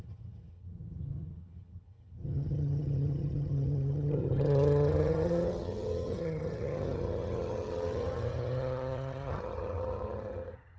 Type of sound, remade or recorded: remade